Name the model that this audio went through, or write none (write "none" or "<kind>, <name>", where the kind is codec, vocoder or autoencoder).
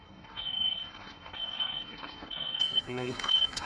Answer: codec, SNAC